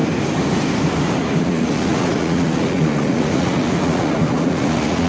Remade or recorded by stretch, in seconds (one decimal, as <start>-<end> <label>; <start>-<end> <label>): 0.0-1.4 recorded; 1.4-5.1 remade